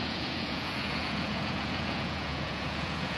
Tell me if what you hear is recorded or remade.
remade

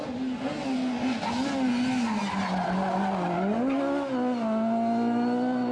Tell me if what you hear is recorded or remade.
recorded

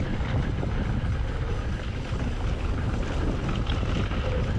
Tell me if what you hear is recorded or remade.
recorded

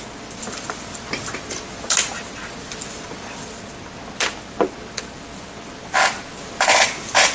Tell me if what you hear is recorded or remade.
recorded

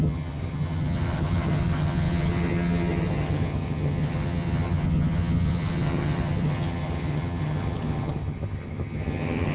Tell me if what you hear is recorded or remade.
remade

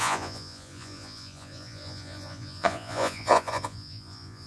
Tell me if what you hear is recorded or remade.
remade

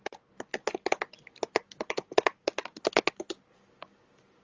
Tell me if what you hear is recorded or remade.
recorded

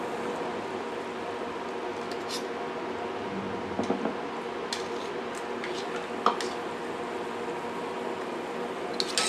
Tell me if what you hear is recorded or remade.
recorded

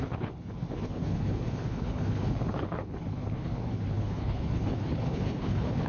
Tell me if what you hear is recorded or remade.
remade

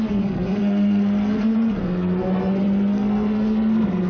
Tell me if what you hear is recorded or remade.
remade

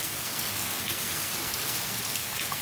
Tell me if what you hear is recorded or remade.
remade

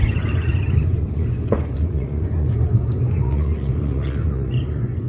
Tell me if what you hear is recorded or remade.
remade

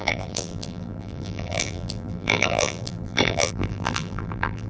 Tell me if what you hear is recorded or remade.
remade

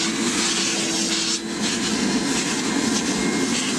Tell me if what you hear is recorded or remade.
recorded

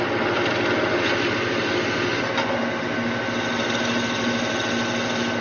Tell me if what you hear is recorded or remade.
recorded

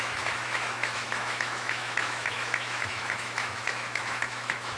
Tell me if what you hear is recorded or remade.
remade